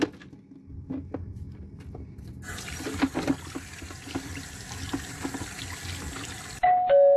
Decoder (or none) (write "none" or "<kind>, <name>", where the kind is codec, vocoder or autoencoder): none